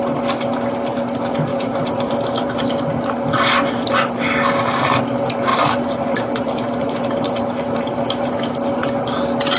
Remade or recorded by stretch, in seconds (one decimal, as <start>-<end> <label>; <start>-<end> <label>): 0.0-1.5 recorded; 1.5-2.7 remade; 2.7-5.5 recorded; 5.5-8.4 remade; 8.4-9.6 recorded